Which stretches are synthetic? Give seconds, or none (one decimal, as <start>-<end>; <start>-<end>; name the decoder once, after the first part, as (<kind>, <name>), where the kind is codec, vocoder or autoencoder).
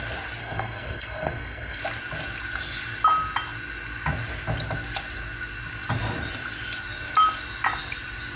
0.4-1.8 (codec, SNAC)